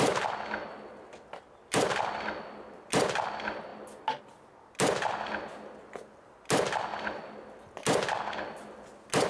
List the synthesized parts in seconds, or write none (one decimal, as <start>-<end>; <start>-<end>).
none